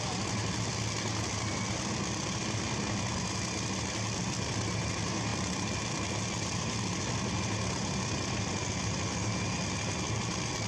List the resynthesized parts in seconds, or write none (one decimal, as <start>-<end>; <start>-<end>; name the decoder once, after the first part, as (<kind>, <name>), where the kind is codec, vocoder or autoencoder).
none